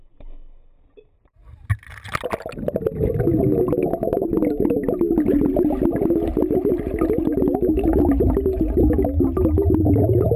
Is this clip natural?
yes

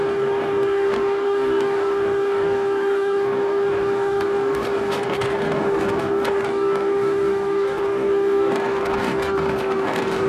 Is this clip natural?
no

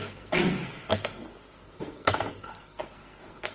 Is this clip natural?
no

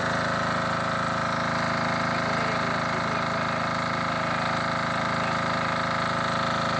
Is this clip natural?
yes